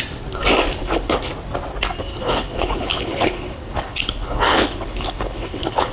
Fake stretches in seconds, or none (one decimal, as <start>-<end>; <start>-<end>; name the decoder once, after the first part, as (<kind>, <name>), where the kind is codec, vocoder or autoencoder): 0.8-1.3 (codec, HILCodec); 2.1-5.9